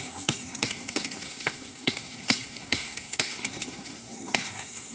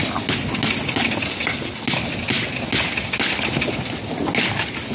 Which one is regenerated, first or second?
first